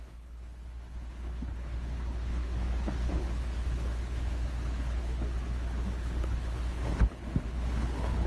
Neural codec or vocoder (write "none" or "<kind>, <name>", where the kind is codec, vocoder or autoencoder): codec, HILCodec